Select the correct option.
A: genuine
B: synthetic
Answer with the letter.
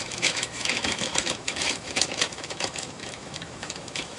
B